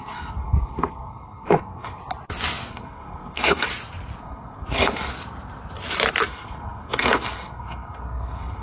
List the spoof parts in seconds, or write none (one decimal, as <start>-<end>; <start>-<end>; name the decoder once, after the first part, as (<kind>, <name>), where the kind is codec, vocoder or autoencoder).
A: 0.0-2.0 (codec, SNAC); 2.7-3.7; 4.2-5.1; 6.3-8.6